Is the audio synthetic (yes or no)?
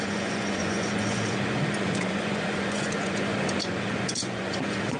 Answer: yes